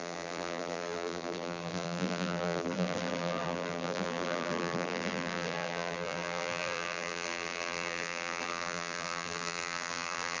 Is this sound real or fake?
fake